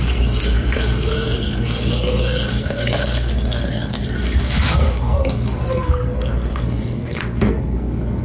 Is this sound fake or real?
fake